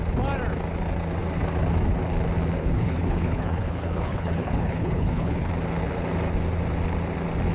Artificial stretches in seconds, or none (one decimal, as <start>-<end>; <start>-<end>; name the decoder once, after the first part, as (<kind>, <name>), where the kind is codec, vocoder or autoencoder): 2.6-5.5 (codec, HILCodec)